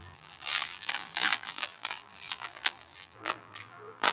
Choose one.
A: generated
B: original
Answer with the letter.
A